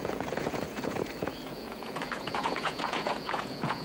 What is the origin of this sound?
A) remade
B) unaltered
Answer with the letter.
A